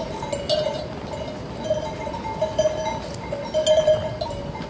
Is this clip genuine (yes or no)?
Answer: yes